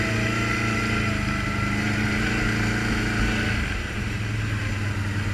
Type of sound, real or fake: real